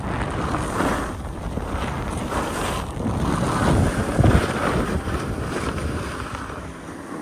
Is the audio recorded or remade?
recorded